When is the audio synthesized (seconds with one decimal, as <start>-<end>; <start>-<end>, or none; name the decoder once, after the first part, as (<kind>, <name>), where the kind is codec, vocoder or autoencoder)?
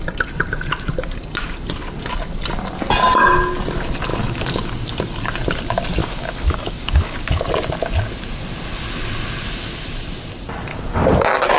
6.0-7.4 (codec, DAC); 10.7-11.2